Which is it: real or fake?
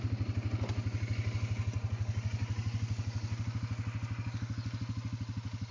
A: real